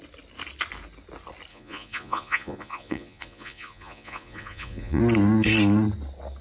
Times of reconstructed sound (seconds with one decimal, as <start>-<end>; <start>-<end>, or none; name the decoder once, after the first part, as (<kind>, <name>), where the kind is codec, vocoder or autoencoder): 1.5-5.0 (vocoder, Vocos)